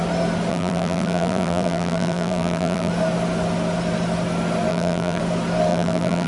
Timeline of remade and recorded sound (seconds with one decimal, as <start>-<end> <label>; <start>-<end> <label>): 0.0-0.5 recorded; 0.5-2.9 remade; 2.9-4.7 recorded; 4.7-5.2 remade; 5.2-5.7 recorded; 5.7-6.3 remade